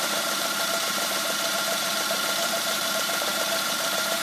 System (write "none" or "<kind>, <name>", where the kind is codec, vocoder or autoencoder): vocoder, BigVGAN v2